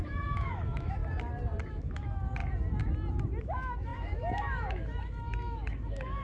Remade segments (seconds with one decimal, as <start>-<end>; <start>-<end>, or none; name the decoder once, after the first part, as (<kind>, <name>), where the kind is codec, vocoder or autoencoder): 0.0-1.0 (autoencoder, DAC-VAE); 1.7-2.4; 3.4-6.2